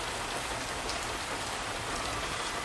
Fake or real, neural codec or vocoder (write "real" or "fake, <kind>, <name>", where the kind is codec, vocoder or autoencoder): fake, vocoder, BigVGAN v2